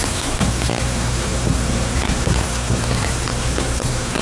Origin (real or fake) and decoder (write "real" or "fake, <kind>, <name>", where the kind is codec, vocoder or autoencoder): fake, codec, SNAC